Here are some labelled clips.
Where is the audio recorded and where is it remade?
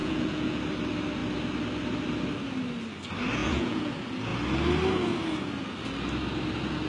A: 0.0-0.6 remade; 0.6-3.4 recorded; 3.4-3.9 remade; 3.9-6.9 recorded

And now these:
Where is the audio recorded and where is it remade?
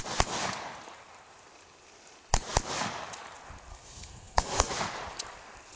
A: 0.0-3.7 recorded; 3.7-4.7 remade; 4.7-5.8 recorded